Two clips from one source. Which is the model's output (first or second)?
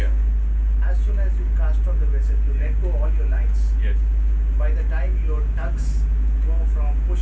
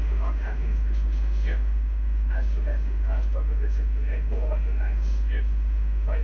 second